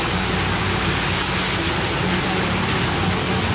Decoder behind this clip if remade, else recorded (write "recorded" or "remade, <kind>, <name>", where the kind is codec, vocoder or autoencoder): recorded